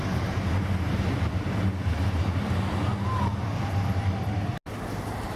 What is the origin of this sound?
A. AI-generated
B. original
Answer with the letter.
B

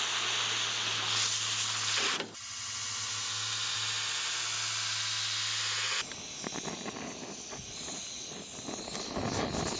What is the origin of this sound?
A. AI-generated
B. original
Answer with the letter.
B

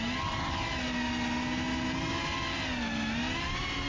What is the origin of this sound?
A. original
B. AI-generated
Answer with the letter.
A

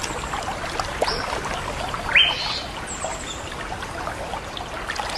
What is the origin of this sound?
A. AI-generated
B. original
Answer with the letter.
B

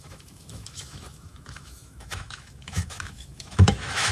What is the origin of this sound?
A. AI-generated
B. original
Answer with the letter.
A